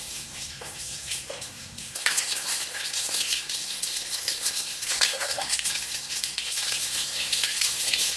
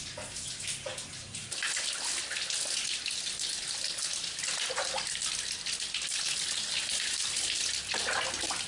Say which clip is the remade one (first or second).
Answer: first